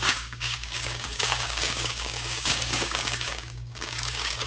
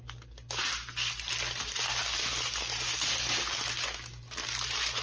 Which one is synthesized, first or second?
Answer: first